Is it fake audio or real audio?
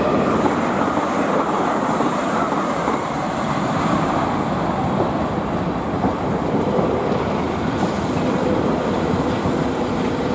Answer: fake